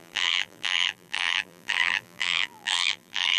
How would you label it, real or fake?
fake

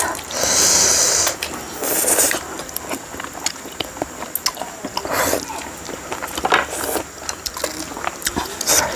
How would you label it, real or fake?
real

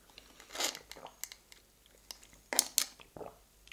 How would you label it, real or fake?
real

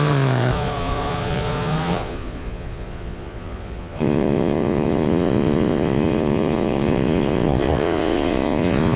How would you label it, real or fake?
fake